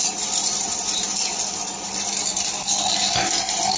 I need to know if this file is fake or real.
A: real